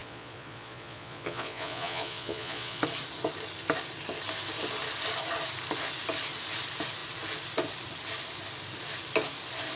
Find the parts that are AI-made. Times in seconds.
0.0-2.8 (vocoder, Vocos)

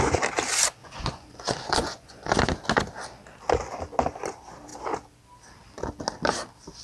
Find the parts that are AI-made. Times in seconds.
0.8-2.3 (vocoder, Vocos)